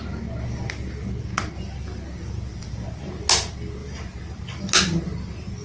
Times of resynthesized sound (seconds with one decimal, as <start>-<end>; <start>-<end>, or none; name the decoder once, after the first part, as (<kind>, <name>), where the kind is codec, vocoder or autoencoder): 2.5-3.1 (vocoder, BigVGAN v2); 3.8-4.4